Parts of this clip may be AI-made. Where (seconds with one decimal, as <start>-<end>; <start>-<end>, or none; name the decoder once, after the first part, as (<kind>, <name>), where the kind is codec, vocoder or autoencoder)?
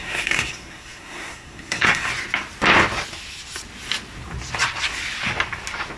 0.0-2.1 (codec, SNAC)